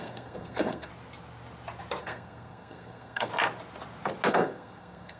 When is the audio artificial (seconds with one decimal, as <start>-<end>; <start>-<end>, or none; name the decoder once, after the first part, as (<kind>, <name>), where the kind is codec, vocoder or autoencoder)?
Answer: 0.0-0.9 (codec, SNAC); 2.0-3.3; 4.3-5.2